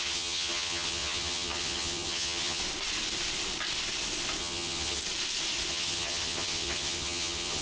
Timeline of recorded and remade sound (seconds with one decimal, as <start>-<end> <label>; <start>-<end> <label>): 0.0-2.6 remade; 2.6-4.4 recorded; 4.4-5.0 remade; 5.0-5.7 recorded; 5.7-7.6 remade